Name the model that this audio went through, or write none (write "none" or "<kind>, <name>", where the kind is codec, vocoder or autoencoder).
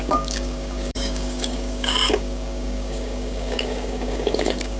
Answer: codec, DAC